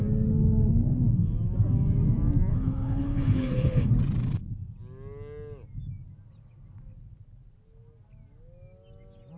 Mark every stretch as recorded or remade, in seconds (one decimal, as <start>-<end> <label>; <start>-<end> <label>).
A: 0.0-2.5 recorded; 2.5-3.9 remade; 3.9-9.4 recorded